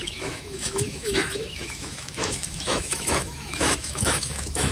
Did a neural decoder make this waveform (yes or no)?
yes